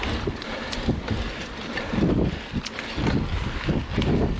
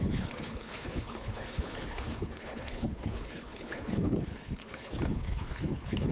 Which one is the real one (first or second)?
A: first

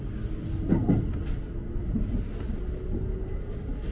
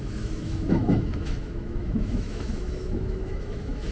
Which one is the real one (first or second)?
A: first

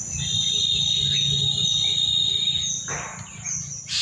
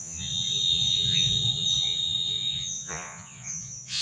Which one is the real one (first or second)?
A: first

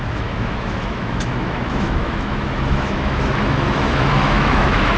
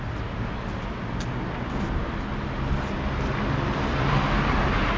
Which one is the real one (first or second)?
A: second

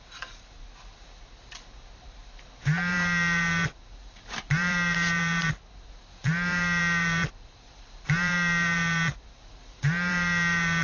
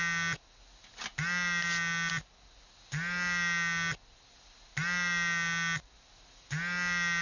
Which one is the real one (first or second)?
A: second